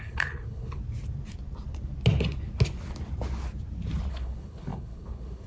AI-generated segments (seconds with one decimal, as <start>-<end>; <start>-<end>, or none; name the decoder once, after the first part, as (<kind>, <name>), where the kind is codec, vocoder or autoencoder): 0.0-0.8 (codec, HILCodec); 4.1-5.5